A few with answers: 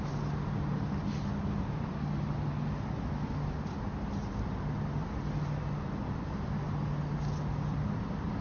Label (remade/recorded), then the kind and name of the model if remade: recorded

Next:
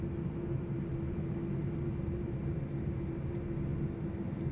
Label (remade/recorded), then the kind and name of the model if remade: recorded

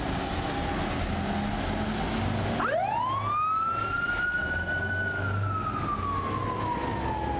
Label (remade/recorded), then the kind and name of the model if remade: recorded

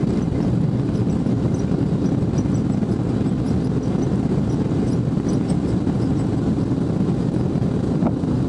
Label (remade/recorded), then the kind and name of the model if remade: recorded